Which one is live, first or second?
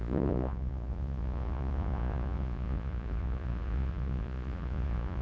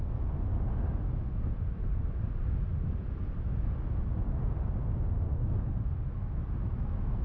second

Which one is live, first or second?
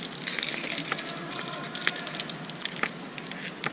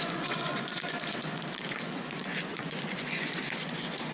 first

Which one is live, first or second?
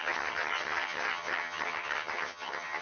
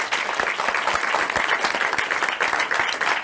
second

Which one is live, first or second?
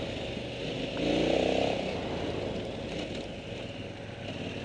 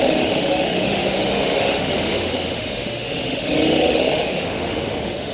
first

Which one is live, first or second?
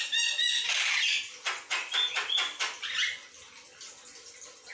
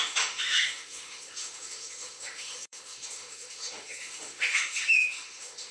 first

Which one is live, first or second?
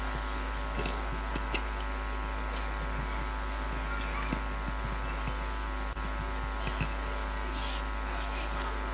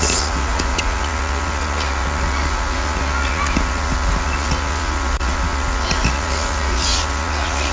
first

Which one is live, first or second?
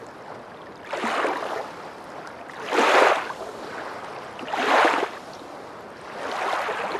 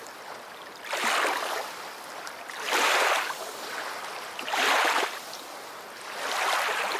first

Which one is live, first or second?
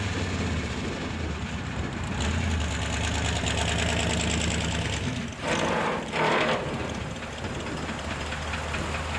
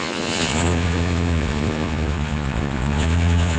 first